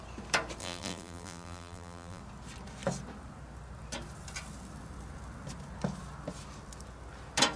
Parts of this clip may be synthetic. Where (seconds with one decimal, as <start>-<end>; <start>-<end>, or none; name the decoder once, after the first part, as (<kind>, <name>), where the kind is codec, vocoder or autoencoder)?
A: 0.6-2.2 (vocoder, BigVGAN v2)

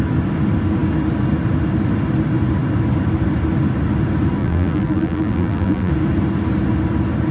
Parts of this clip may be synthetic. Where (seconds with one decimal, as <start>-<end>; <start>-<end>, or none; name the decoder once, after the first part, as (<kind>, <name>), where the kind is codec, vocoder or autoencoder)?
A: 4.4-5.9 (vocoder, BigVGAN v2)

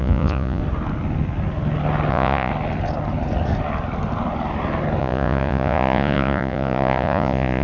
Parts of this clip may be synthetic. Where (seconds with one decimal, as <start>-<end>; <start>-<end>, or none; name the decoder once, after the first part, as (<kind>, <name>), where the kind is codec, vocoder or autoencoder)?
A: 0.0-0.6 (vocoder, Vocos); 2.1-2.5; 5.0-7.6

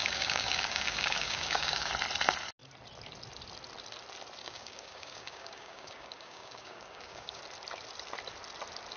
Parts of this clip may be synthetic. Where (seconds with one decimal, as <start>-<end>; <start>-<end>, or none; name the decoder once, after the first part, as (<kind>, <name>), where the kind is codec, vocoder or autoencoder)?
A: 0.0-1.9 (codec, DAC); 4.4-7.4

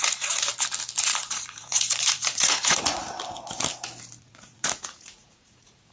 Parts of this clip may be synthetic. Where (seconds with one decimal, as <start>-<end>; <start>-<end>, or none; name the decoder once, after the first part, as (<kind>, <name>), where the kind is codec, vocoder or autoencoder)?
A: 0.0-0.5 (vocoder, Vocos); 1.0-3.0; 4.2-5.9

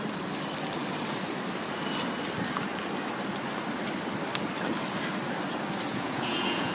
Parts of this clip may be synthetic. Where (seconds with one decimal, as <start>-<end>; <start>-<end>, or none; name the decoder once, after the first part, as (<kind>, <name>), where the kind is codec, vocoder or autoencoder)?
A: 5.9-6.7 (vocoder, Vocos)

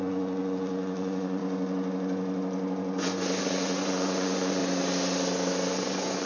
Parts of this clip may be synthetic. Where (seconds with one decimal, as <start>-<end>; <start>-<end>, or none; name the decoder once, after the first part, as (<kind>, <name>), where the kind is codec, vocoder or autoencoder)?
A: 0.0-1.4 (vocoder, Vocos); 3.4-4.6; 5.7-6.3

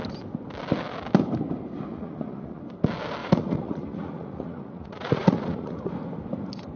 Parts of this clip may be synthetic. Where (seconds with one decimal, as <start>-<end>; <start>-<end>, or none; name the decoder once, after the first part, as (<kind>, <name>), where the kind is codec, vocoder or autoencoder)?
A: 1.9-2.6 (vocoder, Vocos); 3.2-5.9